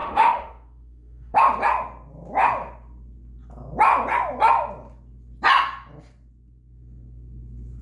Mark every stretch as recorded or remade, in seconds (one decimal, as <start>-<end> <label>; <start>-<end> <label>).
0.0-1.4 remade; 1.4-7.8 recorded